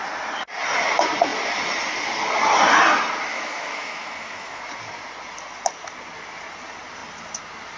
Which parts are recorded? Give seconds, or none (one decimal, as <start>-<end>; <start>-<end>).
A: 0.0-3.3; 4.6-7.8